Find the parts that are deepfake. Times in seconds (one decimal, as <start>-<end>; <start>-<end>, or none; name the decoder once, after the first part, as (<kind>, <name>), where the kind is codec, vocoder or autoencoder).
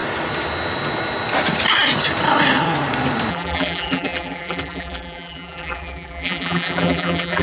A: 3.3-7.4 (vocoder, BigVGAN v2)